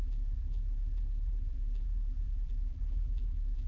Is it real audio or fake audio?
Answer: fake